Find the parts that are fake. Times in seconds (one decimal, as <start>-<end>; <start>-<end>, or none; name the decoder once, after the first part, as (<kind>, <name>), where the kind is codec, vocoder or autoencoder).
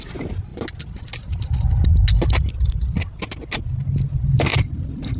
4.5-5.2 (vocoder, BigVGAN v2)